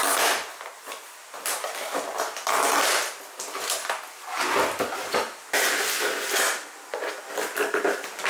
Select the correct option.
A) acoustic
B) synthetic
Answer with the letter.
A